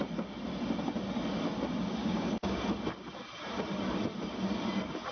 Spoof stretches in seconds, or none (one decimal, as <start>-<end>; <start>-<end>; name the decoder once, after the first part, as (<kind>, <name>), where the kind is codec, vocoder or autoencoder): 2.0-2.6 (codec, DAC)